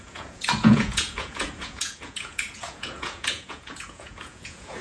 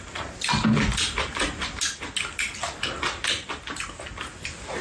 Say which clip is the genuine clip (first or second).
second